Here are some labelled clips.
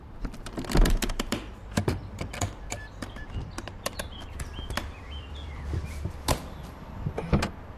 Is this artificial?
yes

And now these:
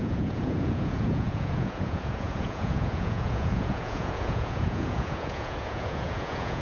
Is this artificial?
yes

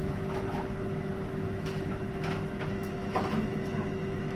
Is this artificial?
yes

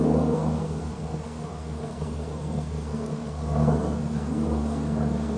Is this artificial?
yes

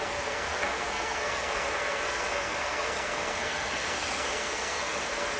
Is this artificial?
yes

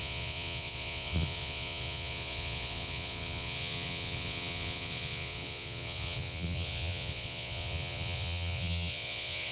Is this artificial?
yes